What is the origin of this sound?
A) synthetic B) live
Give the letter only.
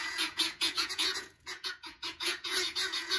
A